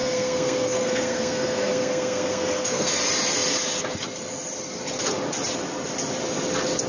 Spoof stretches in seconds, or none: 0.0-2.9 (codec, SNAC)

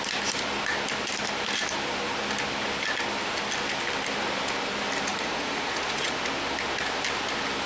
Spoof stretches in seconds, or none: 5.1-6.2 (vocoder, Vocos)

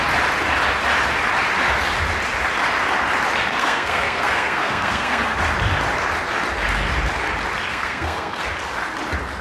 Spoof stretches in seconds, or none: 3.5-5.4 (codec, SNAC); 7.7-8.5

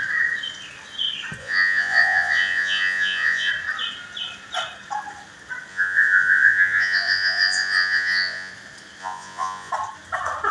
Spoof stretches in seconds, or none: 1.4-3.5 (vocoder, Vocos); 5.7-8.5; 9.0-9.7

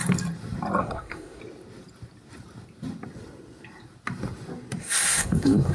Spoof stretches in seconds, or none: 0.8-1.4 (codec, SNAC); 4.8-5.7

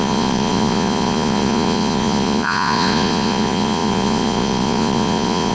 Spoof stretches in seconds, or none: 0.0-5.5 (vocoder, Vocos)

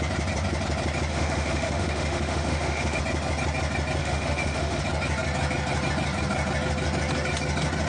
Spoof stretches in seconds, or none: 1.1-3.0 (autoencoder, DAC-VAE); 4.0-4.8